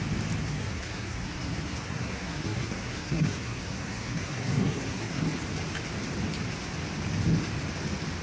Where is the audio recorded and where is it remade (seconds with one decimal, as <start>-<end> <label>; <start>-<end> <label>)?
0.0-0.4 recorded; 0.4-5.2 remade; 5.2-8.2 recorded